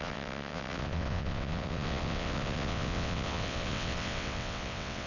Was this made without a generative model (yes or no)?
no